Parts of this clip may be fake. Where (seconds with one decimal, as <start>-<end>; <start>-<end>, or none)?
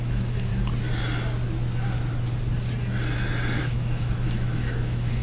0.0-0.5; 3.6-5.2